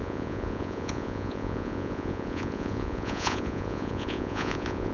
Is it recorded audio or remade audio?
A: remade